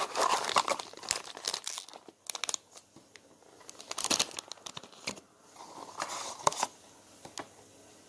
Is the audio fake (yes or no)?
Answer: no